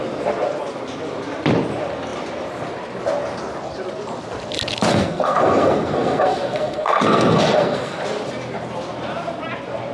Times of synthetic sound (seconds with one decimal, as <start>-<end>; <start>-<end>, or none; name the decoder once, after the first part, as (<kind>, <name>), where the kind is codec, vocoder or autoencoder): 4.9-8.0 (codec, SNAC)